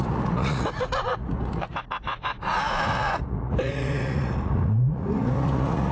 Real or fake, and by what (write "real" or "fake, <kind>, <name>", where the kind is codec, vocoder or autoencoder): fake, vocoder, Vocos